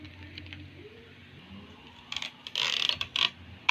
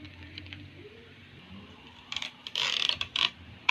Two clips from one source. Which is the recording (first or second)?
first